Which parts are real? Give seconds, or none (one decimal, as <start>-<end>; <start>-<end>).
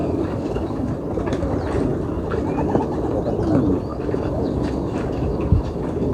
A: 0.9-3.9